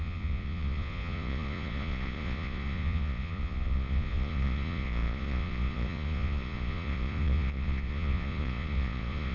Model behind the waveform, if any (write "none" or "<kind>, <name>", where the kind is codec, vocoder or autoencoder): vocoder, Vocos